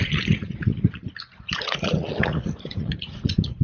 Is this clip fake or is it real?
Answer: fake